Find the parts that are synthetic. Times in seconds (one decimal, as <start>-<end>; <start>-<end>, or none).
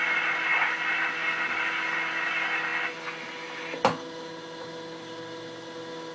none